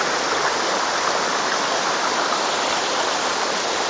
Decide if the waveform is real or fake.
real